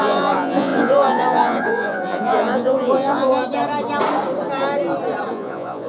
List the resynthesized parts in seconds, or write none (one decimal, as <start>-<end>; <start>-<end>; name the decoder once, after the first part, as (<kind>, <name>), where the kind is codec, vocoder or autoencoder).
0.0-3.3 (vocoder, Vocos); 5.3-5.9